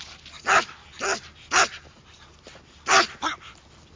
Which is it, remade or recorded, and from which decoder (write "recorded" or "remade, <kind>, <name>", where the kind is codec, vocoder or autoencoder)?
recorded